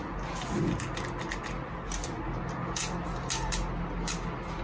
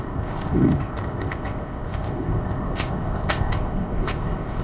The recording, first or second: first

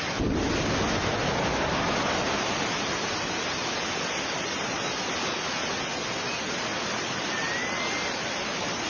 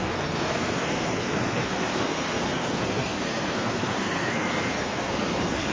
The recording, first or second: first